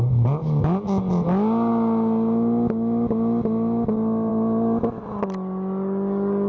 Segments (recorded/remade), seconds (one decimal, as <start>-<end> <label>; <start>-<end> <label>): 0.0-6.5 recorded